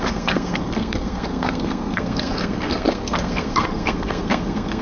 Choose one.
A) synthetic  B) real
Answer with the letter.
A